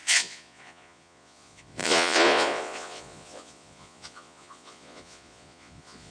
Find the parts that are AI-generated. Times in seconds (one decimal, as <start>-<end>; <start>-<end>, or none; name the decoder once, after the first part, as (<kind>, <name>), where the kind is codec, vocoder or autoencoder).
0.0-6.1 (vocoder, Vocos)